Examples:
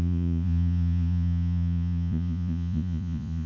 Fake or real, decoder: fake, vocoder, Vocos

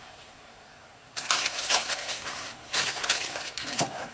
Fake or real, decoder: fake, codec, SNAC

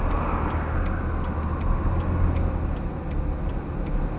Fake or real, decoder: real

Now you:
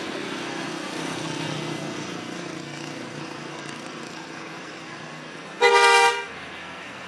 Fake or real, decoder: fake, codec, SNAC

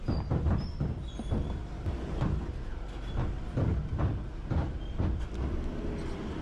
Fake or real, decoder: real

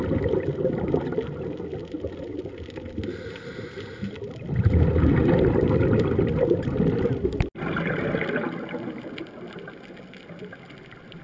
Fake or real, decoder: real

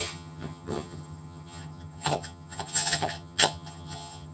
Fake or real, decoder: fake, vocoder, HiFi-GAN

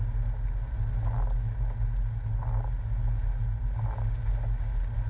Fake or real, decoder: real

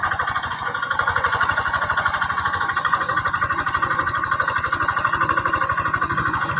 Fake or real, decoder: fake, vocoder, Vocos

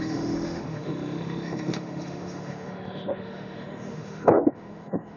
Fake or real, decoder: fake, autoencoder, DAC-VAE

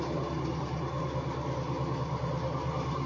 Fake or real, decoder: real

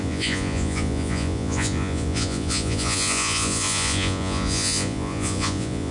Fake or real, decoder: fake, vocoder, Vocos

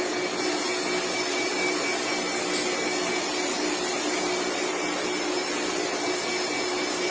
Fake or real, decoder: real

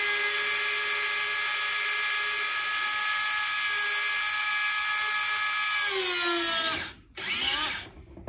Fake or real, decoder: real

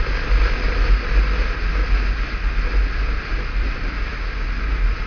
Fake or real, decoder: real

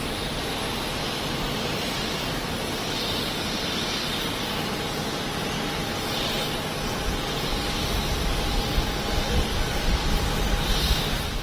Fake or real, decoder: real